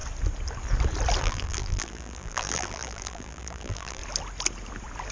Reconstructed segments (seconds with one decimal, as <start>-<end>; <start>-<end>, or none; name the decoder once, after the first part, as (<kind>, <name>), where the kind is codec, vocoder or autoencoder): 1.2-4.0 (vocoder, BigVGAN v2)